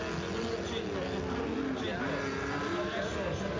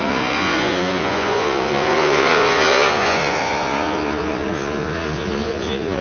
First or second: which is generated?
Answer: second